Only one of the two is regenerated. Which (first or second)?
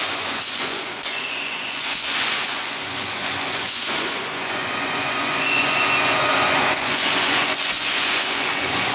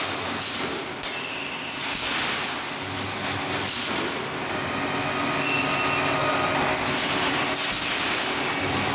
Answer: first